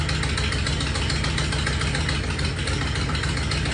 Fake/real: real